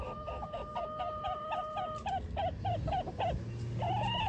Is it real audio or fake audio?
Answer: real